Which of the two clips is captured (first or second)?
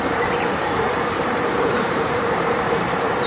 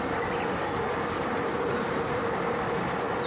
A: second